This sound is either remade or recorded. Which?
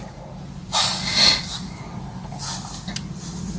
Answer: recorded